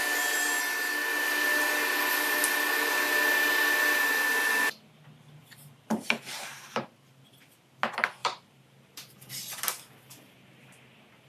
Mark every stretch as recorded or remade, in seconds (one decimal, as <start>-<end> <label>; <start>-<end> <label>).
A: 0.0-5.4 recorded; 5.4-6.9 remade; 6.9-8.2 recorded; 8.2-9.3 remade; 9.3-11.3 recorded

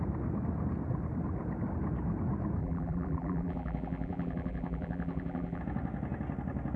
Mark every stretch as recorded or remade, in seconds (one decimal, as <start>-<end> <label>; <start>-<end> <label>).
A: 0.0-2.6 recorded; 2.6-5.6 remade; 5.6-6.8 recorded